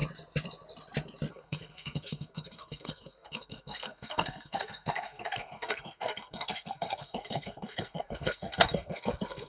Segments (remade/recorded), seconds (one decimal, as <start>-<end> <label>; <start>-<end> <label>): 0.0-1.3 recorded; 1.3-9.5 remade